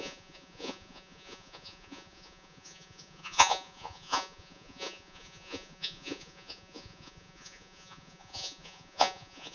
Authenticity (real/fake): fake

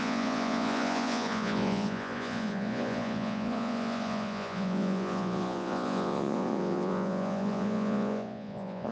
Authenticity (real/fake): fake